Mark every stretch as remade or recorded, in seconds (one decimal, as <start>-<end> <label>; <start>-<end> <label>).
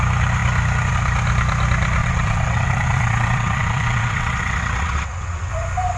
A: 0.0-2.0 recorded; 2.0-5.5 remade; 5.5-6.0 recorded